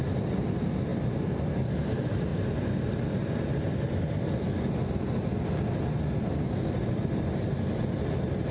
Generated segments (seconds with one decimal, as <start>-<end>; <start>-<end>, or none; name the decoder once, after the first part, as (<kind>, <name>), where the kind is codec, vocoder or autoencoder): none